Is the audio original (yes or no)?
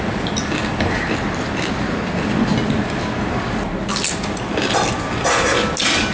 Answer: yes